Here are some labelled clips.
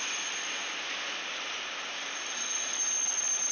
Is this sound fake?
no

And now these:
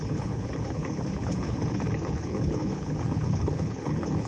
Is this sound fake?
yes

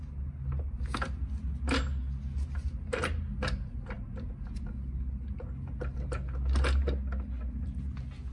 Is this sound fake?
no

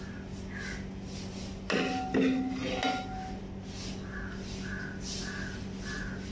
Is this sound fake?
no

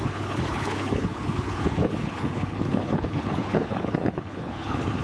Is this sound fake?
yes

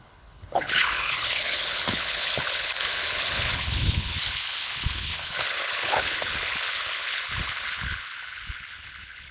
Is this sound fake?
yes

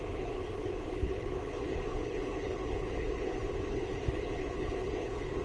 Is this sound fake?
yes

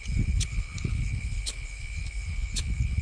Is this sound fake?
yes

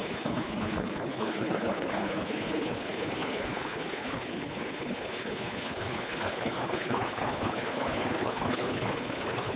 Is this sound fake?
yes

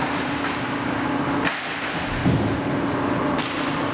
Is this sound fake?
no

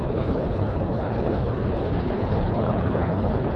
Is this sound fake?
yes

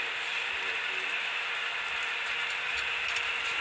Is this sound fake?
no